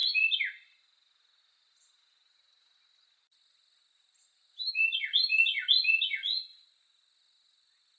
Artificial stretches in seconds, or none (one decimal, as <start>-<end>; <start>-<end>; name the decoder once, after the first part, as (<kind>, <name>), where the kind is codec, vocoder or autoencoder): none